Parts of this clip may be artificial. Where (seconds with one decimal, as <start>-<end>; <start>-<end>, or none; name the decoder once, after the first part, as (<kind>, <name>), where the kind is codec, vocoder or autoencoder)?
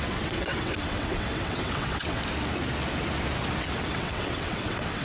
0.0-2.2 (vocoder, WaveNeXt); 3.6-5.0